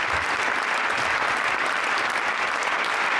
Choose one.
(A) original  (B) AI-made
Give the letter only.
A